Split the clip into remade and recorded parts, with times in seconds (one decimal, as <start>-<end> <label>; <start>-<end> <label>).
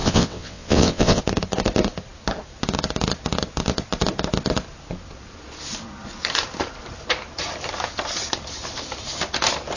0.0-1.2 remade; 1.2-9.8 recorded